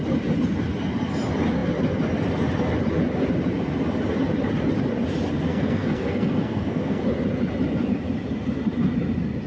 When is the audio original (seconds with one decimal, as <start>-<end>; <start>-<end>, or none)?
0.0-5.5; 7.0-9.5